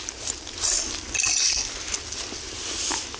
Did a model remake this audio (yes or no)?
no